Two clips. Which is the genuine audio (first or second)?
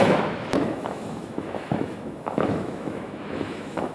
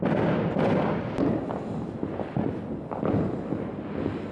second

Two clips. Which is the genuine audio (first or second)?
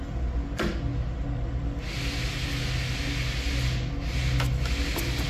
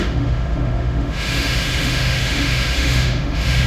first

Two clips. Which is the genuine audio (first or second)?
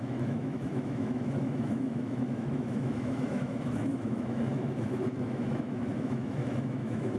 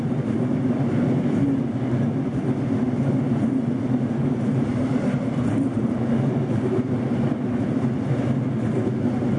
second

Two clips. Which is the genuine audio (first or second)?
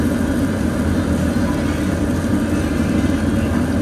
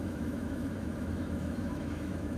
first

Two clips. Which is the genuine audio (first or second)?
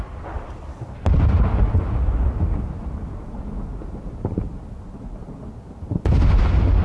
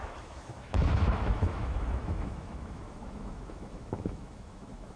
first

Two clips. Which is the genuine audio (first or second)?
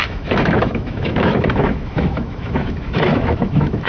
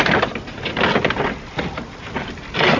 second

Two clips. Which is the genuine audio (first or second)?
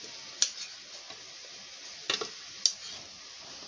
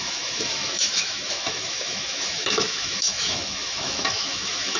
first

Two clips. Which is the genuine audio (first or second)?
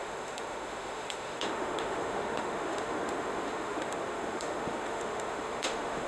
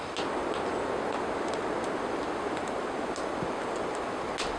second